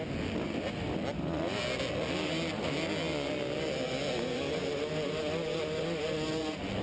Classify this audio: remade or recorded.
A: recorded